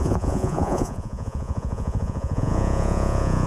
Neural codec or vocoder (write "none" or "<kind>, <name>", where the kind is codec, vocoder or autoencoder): vocoder, Vocos